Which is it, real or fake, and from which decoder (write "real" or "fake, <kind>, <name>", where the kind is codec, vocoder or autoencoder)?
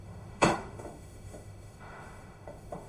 fake, autoencoder, DAC-VAE